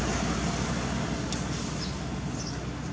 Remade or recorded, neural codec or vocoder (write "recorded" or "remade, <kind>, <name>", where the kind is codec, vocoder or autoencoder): recorded